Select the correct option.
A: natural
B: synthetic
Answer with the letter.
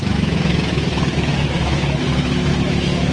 B